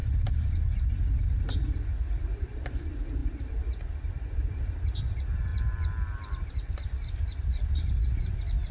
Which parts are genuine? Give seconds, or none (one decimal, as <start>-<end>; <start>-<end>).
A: 0.6-3.2; 4.6-5.5; 8.2-8.7